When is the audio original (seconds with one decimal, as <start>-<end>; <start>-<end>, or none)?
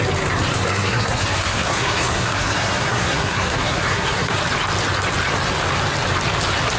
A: 0.0-0.5; 4.4-6.8